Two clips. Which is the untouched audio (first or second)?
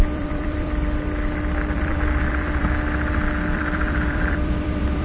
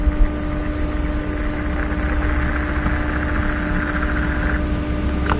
second